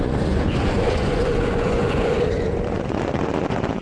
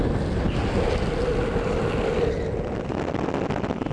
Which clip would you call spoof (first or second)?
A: first